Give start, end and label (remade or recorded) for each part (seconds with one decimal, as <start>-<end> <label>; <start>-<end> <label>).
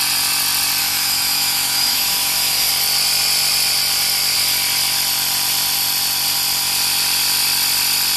0.0-0.8 recorded; 0.8-2.7 remade; 2.7-8.2 recorded